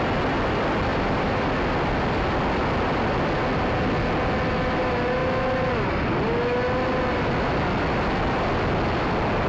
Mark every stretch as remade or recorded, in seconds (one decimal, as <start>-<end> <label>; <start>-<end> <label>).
0.0-0.9 recorded; 0.9-1.5 remade; 1.5-9.5 recorded